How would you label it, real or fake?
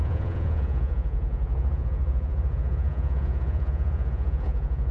fake